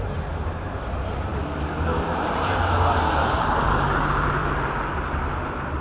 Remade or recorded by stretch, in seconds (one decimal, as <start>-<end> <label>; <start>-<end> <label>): 0.0-4.4 remade; 4.4-5.1 recorded; 5.1-5.8 remade